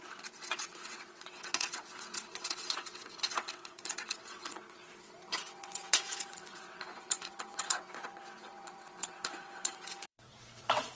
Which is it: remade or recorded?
remade